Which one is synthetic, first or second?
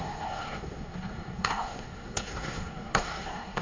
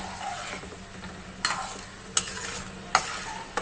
first